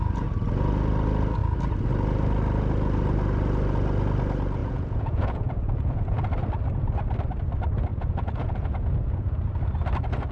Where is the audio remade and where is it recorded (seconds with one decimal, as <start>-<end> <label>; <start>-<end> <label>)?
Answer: 0.0-4.6 recorded; 4.6-6.2 remade; 6.2-7.9 recorded; 7.9-9.5 remade; 9.5-10.3 recorded